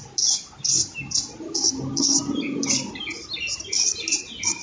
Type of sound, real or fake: real